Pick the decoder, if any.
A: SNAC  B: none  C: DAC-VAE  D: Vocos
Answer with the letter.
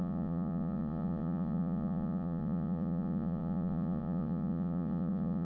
D